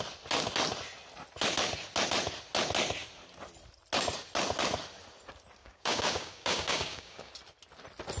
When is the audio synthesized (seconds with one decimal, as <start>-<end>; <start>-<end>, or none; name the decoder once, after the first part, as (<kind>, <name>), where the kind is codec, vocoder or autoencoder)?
5.6-7.3 (codec, DAC)